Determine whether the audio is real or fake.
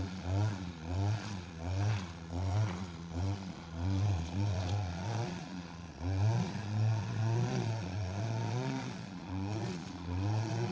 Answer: fake